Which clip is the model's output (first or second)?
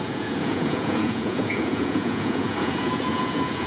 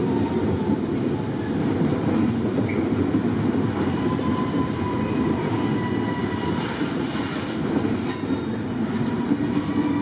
first